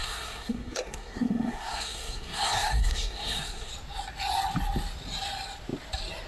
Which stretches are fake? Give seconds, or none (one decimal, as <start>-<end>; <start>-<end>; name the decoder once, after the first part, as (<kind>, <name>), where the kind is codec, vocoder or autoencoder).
0.0-3.7 (codec, SNAC)